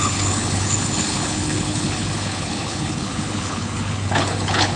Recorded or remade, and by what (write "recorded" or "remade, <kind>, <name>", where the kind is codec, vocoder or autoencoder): remade, codec, HILCodec